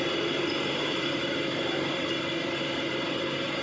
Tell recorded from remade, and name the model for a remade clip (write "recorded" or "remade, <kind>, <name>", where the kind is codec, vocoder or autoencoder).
remade, vocoder, BigVGAN v2